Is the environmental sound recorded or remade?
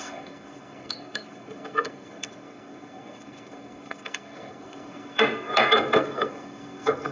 remade